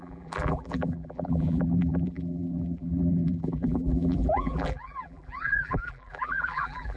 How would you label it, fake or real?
fake